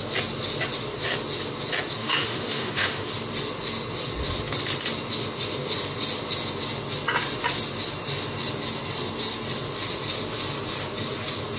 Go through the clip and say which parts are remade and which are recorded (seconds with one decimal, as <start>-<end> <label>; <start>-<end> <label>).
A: 0.0-2.0 recorded; 2.0-3.1 remade; 3.1-11.6 recorded